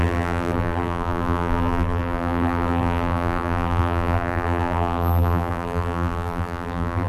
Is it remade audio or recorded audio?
remade